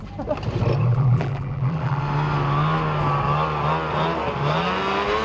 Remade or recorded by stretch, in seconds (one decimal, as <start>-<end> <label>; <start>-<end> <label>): 0.0-0.9 recorded; 0.9-2.0 remade; 2.0-5.2 recorded

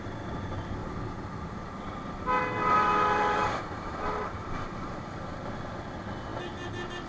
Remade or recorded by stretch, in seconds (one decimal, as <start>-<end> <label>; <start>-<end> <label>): 0.0-0.8 recorded; 0.8-5.1 remade; 5.1-7.1 recorded